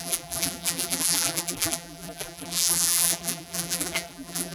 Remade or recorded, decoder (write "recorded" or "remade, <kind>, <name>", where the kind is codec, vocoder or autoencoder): remade, vocoder, BigVGAN v2